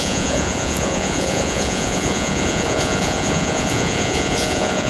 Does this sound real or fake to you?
fake